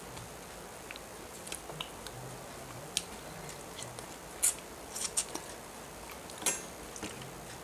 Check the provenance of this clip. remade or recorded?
recorded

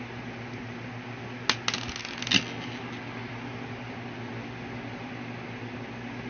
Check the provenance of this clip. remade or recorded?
recorded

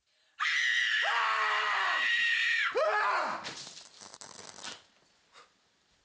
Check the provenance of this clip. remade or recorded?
recorded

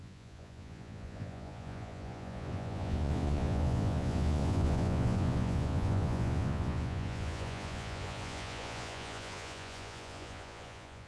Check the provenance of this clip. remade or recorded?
remade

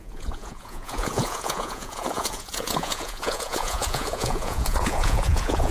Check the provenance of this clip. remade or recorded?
remade